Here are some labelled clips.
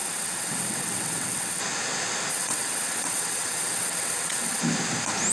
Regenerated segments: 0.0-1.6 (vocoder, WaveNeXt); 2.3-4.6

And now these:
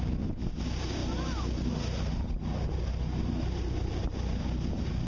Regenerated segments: none

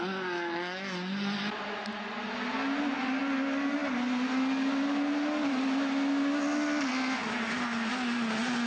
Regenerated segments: none

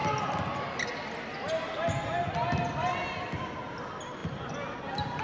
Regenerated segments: none

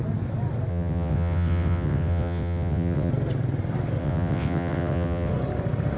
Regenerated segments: 0.7-3.1 (vocoder, WaveNeXt); 4.0-5.3